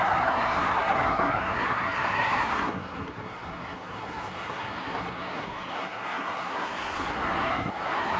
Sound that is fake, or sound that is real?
fake